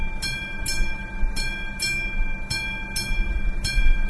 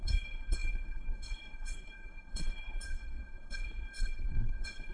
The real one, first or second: first